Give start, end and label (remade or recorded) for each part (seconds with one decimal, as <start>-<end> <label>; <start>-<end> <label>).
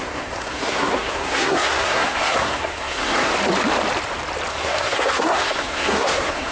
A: 0.0-3.3 remade; 3.3-4.5 recorded; 4.5-6.5 remade